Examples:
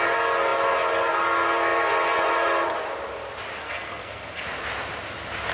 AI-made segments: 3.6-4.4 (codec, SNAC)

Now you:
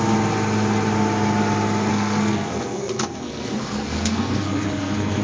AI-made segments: 1.9-5.2 (codec, SNAC)

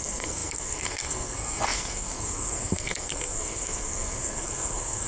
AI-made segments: 0.0-5.1 (codec, SNAC)

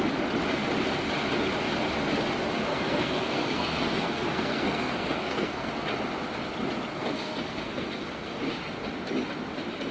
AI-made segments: 2.7-5.7 (codec, SNAC); 7.0-8.4